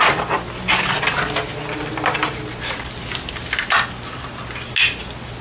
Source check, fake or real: real